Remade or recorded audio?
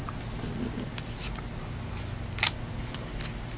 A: recorded